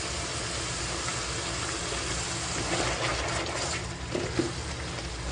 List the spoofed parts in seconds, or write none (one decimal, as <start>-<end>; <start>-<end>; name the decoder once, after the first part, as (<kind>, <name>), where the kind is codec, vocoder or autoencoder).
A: none